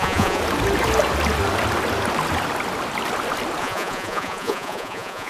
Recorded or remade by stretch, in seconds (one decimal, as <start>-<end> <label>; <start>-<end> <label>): 0.0-0.4 remade; 0.4-3.6 recorded; 3.6-5.3 remade